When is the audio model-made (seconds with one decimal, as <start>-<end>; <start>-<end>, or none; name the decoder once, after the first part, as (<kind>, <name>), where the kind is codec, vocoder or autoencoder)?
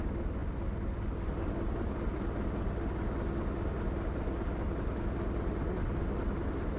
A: none